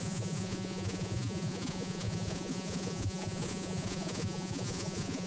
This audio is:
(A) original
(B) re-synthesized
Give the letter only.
B